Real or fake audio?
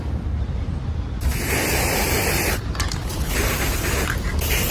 real